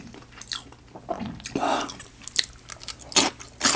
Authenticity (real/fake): real